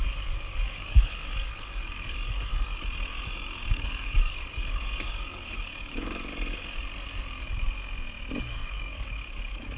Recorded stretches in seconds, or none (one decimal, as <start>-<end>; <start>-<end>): 2.5-3.7; 6.3-8.4